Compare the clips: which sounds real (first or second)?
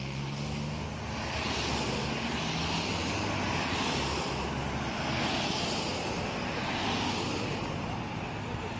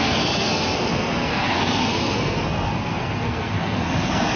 first